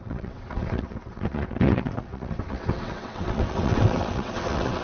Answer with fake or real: fake